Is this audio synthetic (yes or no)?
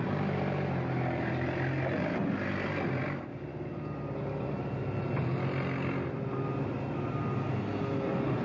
no